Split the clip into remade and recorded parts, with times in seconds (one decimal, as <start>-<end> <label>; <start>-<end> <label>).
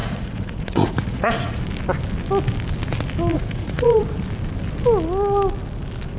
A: 0.0-1.6 remade; 1.6-3.3 recorded; 3.3-4.0 remade; 4.0-6.2 recorded